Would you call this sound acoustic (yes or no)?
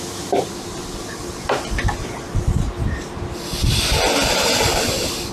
yes